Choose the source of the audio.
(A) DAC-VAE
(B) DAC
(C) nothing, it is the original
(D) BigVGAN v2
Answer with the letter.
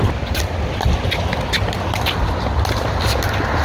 C